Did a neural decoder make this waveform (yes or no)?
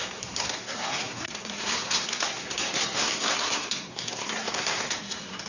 yes